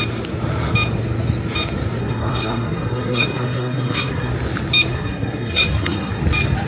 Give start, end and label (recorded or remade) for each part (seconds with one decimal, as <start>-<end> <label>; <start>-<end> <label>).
0.0-2.0 recorded; 2.0-4.3 remade; 4.3-4.9 recorded; 4.9-6.2 remade; 6.2-6.7 recorded